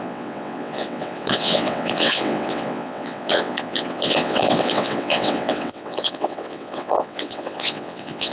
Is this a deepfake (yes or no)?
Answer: yes